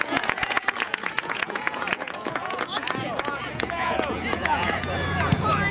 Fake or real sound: fake